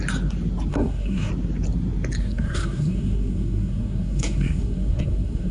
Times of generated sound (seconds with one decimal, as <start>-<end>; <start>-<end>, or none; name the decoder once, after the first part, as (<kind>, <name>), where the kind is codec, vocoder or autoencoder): 0.7-1.3 (codec, SNAC); 2.2-5.5